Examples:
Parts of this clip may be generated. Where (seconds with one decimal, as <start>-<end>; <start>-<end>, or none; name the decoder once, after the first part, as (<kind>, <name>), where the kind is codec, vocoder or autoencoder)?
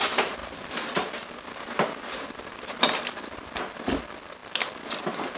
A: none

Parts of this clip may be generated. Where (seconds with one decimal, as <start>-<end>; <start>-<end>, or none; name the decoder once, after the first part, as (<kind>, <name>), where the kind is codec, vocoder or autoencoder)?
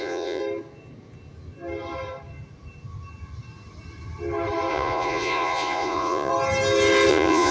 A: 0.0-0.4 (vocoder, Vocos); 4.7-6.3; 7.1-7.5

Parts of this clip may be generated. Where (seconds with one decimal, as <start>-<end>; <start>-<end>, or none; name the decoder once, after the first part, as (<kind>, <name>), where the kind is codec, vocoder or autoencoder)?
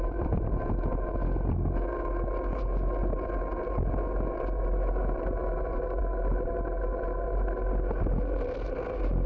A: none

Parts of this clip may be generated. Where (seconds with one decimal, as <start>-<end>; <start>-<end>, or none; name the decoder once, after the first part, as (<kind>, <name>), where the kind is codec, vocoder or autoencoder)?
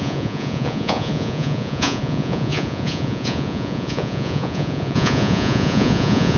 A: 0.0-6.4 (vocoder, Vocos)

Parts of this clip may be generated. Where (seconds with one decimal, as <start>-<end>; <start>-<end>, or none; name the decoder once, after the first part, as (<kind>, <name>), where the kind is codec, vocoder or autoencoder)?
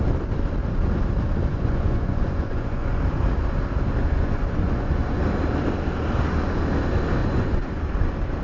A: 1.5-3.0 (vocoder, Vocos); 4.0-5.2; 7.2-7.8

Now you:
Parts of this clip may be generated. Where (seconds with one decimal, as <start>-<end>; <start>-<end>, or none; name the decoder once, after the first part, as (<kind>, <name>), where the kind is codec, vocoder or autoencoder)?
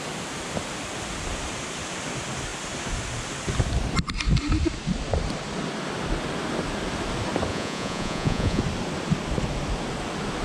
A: 7.5-8.6 (vocoder, Vocos)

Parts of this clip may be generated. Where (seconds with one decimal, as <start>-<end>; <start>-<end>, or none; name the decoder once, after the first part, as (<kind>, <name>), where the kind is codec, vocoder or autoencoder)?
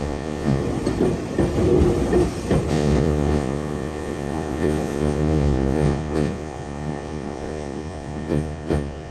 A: 0.0-0.6 (vocoder, Vocos); 2.7-9.1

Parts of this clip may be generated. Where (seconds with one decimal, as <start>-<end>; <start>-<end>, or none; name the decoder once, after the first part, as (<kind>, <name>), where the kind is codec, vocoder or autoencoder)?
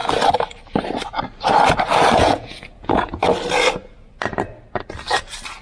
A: 2.2-3.2 (vocoder, Vocos)